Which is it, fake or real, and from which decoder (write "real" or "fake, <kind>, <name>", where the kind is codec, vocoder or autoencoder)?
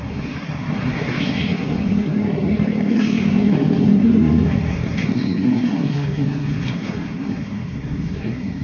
fake, codec, SNAC